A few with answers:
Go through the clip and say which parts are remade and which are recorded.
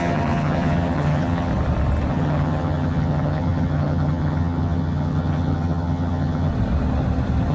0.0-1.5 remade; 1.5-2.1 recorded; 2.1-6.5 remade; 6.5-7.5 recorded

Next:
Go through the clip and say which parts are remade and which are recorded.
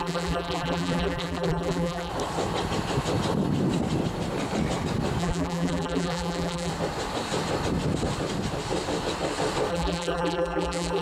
0.0-2.1 remade; 2.1-5.2 recorded; 5.2-6.7 remade; 6.7-9.7 recorded; 9.7-11.0 remade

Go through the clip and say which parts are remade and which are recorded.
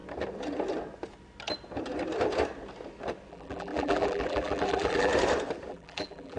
0.0-3.3 recorded; 3.3-5.1 remade; 5.1-5.7 recorded; 5.7-6.4 remade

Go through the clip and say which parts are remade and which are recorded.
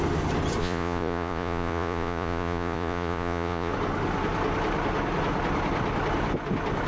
0.0-0.6 recorded; 0.6-3.7 remade; 3.7-6.9 recorded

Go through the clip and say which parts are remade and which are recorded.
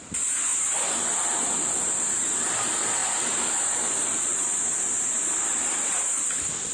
0.0-6.7 recorded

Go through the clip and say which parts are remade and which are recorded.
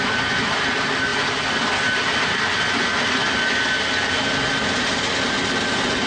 0.0-6.1 recorded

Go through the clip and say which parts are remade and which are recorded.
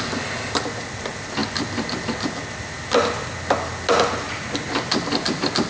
0.0-5.7 recorded